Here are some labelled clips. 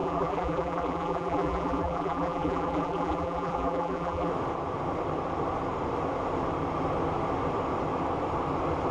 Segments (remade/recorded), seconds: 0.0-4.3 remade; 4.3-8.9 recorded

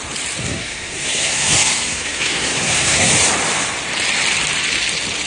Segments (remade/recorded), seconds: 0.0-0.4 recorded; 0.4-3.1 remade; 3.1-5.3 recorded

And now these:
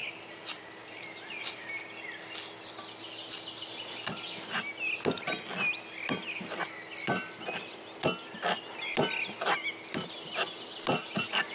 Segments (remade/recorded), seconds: 0.0-1.6 remade; 1.6-11.5 recorded

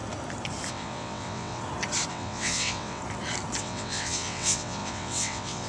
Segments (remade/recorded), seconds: 0.0-0.7 recorded; 0.7-1.6 remade; 1.6-2.1 recorded; 2.1-3.0 remade; 3.0-3.6 recorded; 3.6-5.7 remade

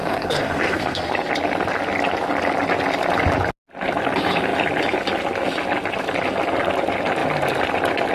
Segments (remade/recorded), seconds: 0.0-1.1 remade; 1.1-8.1 recorded

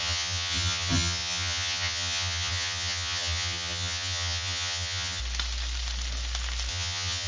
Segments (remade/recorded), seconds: 0.0-5.2 remade; 5.2-6.7 recorded; 6.7-7.3 remade

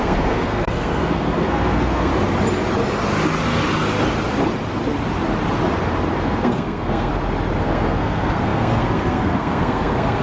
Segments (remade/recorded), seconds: 0.0-2.1 remade; 2.1-6.2 recorded; 6.2-7.1 remade; 7.1-7.6 recorded; 7.6-10.2 remade